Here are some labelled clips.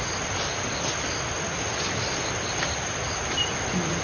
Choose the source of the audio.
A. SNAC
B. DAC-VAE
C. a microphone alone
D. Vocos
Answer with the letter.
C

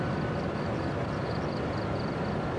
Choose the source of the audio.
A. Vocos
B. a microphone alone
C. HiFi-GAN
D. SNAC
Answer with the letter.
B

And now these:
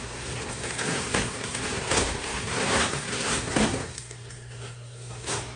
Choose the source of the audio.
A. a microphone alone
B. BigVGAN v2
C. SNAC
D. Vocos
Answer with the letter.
C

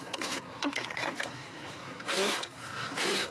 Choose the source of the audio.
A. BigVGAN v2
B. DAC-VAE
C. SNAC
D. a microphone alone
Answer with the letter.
C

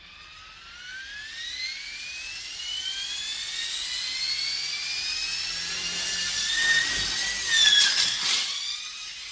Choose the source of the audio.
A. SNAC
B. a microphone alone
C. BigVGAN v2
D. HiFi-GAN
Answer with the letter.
B